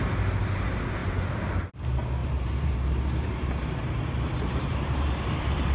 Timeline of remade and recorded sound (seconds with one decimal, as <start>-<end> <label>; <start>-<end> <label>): 0.0-2.2 recorded; 2.2-5.7 remade